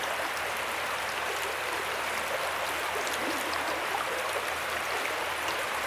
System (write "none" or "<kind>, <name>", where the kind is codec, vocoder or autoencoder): vocoder, BigVGAN v2